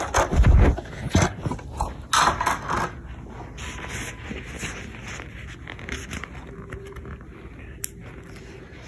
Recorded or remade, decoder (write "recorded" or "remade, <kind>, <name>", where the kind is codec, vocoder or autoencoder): recorded